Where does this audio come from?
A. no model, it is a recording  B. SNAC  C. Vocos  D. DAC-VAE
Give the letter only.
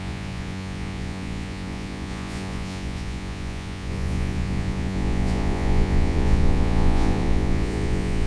C